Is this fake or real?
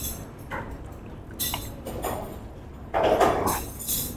real